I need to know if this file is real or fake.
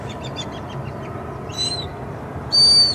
real